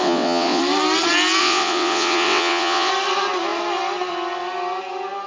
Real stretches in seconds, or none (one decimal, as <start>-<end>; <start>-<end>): 0.6-1.4; 2.9-5.3